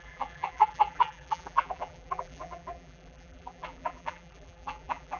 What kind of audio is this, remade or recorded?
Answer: remade